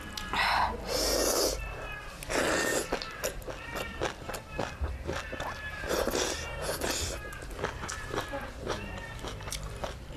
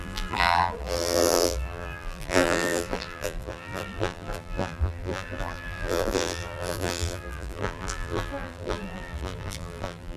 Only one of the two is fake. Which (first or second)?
second